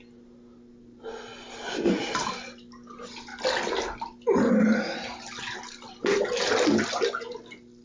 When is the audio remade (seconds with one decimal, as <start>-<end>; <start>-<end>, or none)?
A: none